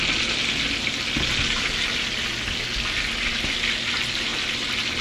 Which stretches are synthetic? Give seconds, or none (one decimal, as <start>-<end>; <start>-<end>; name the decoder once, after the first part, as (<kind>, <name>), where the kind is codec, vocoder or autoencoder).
none